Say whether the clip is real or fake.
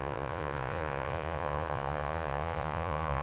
fake